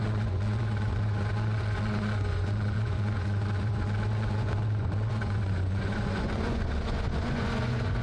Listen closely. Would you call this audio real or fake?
fake